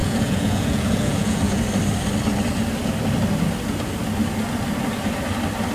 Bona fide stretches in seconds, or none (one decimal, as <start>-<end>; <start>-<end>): 1.6-5.7